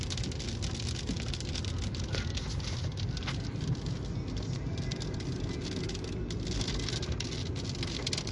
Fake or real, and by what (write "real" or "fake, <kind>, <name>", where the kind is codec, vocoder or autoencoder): real